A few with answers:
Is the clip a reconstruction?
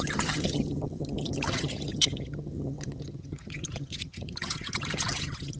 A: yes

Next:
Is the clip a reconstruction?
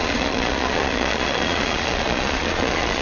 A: yes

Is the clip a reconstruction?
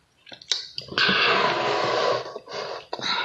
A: no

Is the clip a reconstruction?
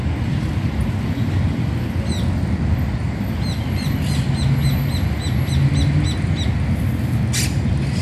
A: no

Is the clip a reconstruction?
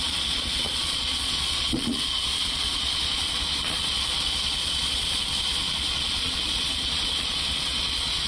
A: yes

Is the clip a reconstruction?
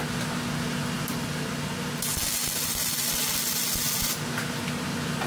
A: no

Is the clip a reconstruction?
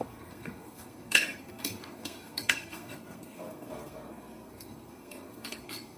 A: yes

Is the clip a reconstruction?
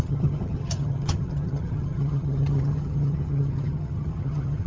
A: yes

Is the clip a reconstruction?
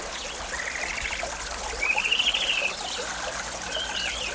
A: no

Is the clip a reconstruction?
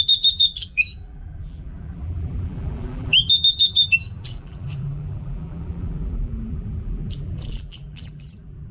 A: yes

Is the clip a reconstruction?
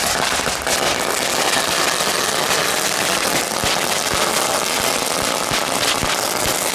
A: no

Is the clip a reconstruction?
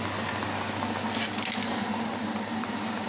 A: no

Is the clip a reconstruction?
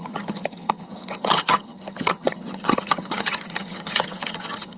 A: yes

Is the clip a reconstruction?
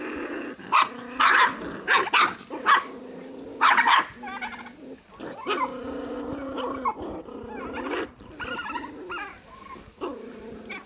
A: no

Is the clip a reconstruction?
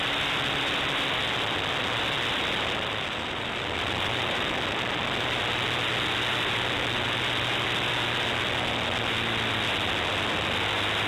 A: no